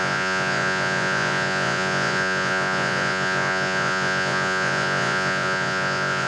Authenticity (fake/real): fake